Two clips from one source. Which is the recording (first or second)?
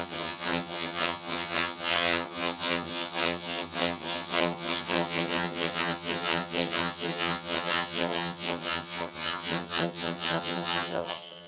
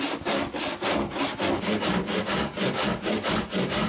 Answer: second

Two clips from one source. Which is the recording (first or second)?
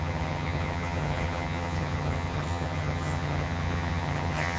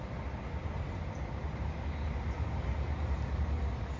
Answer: second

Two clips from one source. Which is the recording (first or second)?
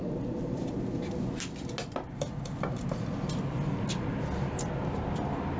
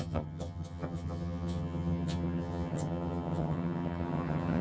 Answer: first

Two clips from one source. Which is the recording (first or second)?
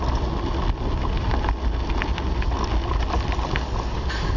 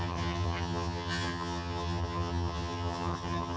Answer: first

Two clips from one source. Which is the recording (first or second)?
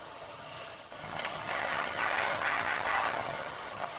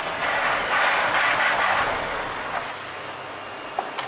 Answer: second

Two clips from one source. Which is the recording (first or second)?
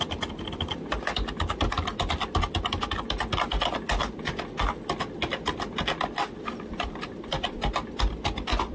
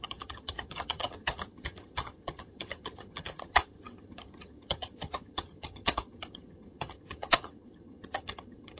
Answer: first